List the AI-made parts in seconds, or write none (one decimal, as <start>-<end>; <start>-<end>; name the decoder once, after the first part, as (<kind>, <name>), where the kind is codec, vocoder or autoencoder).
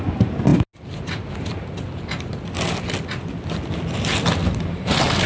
4.4-5.3 (vocoder, BigVGAN v2)